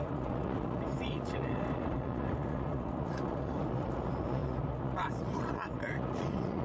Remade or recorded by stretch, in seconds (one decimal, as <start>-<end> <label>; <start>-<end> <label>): 0.0-6.6 remade